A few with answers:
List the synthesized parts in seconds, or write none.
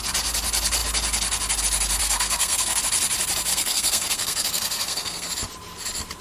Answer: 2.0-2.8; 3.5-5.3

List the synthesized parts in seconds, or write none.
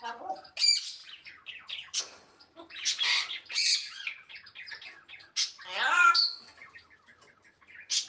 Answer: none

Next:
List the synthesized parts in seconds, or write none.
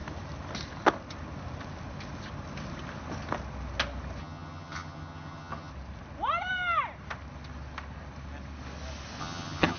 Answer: 4.2-5.7; 9.2-9.8